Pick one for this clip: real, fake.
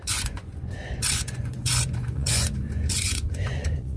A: fake